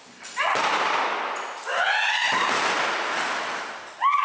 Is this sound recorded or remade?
recorded